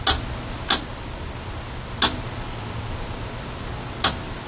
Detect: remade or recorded recorded